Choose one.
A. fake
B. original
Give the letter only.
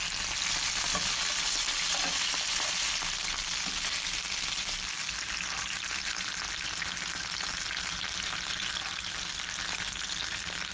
B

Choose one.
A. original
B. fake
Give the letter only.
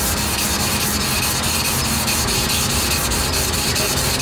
A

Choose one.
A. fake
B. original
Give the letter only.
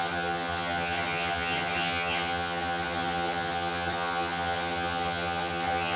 A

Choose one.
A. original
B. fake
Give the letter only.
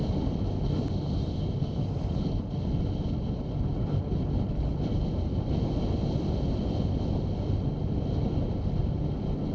A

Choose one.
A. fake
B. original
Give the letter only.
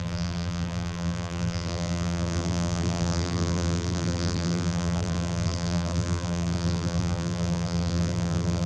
A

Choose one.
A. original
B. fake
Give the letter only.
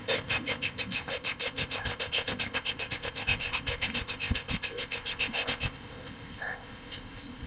B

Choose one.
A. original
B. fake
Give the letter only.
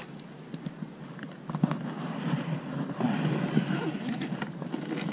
A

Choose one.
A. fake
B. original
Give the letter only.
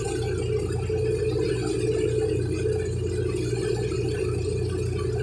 B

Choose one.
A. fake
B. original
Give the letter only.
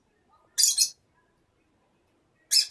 B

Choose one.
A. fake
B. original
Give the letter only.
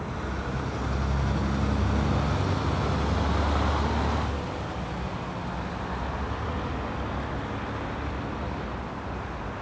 B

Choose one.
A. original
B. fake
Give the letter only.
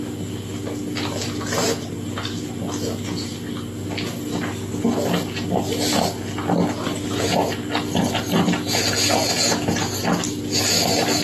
A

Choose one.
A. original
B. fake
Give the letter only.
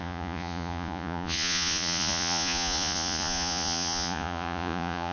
B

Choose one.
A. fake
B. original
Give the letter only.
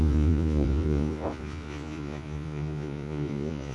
A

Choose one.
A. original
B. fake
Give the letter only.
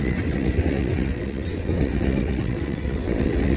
B